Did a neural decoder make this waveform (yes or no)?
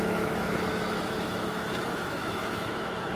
yes